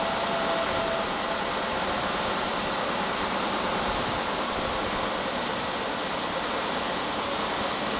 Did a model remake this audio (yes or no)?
no